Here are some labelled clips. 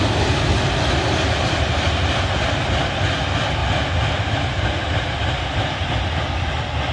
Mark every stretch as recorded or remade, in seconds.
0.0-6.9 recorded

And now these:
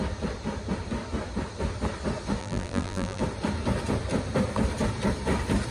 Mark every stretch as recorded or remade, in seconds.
0.0-2.4 recorded; 2.4-3.2 remade; 3.2-5.7 recorded

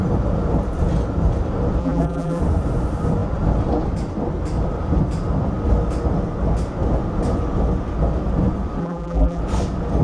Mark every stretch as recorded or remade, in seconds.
0.0-1.8 recorded; 1.8-2.4 remade; 2.4-8.8 recorded; 8.8-9.4 remade; 9.4-10.0 recorded

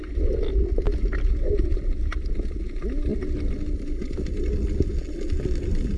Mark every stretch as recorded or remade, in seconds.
0.0-6.0 recorded